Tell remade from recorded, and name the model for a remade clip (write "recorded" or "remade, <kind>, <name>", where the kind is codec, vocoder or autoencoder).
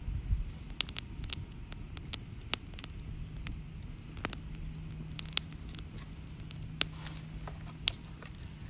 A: recorded